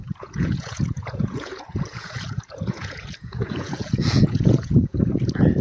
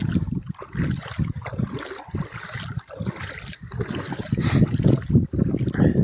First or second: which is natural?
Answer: second